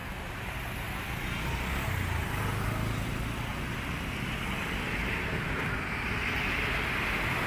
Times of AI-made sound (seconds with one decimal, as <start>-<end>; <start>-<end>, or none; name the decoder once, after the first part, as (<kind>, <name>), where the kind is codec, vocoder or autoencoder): 5.0-5.7 (vocoder, BigVGAN v2)